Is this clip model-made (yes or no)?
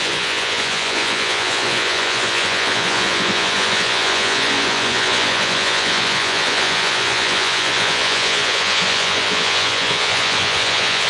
yes